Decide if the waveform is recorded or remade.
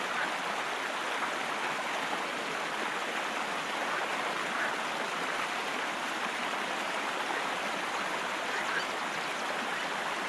recorded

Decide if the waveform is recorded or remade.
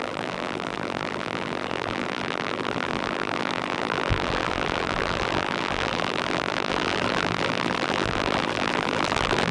remade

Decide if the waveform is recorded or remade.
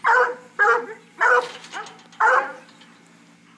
recorded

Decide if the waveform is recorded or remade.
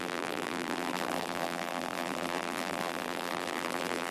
remade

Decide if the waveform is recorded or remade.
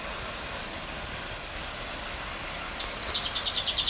recorded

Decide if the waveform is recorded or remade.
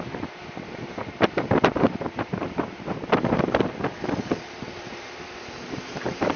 remade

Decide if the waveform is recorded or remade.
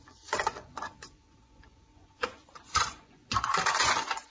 remade